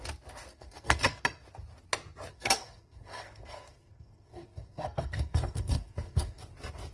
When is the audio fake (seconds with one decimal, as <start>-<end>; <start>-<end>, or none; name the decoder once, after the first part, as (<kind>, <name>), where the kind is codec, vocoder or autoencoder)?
0.5-1.2 (codec, SNAC); 2.3-6.4